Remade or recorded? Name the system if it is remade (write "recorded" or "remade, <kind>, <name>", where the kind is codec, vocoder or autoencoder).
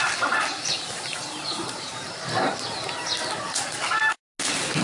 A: recorded